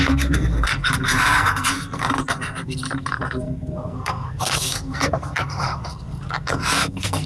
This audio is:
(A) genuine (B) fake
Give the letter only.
B